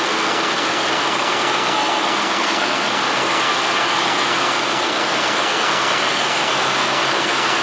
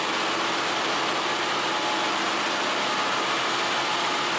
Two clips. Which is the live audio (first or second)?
second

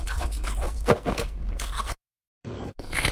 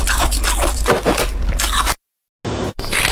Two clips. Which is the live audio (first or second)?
second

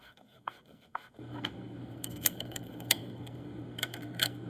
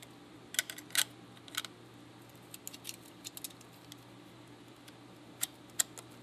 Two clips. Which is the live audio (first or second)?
second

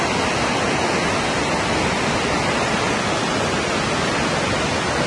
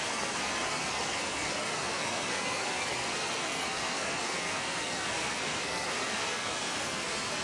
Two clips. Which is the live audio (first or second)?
first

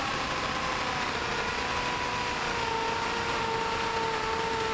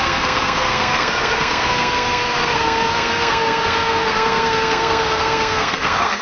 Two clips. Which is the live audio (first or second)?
first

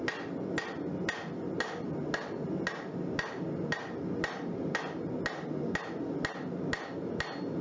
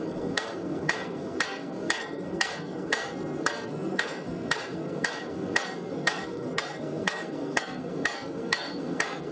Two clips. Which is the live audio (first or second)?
first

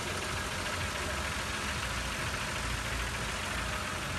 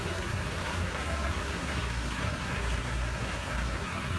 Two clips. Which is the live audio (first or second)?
first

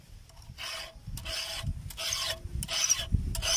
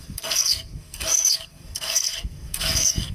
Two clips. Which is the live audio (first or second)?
first